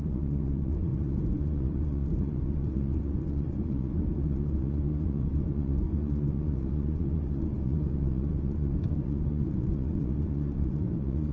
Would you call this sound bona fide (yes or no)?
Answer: no